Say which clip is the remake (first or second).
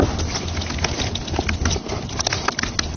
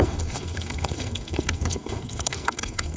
second